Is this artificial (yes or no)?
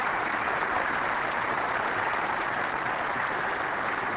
no